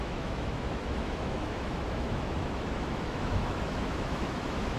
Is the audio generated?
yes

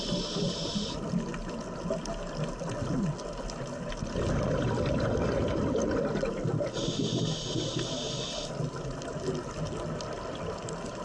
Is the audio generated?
no